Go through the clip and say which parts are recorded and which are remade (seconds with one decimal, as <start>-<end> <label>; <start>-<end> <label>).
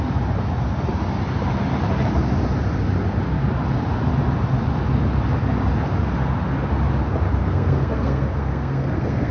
0.0-7.4 recorded; 7.4-9.3 remade